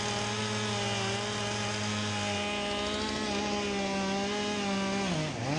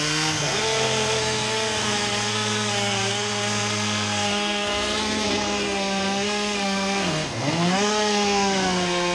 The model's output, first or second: second